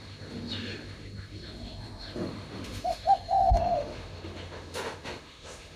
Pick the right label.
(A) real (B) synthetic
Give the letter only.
B